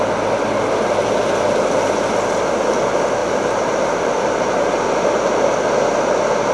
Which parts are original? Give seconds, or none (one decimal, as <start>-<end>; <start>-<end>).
0.0-3.2; 5.1-6.5